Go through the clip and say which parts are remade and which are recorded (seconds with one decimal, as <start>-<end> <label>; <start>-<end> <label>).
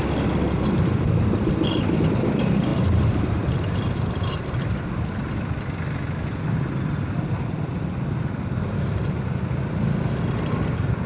0.0-11.1 recorded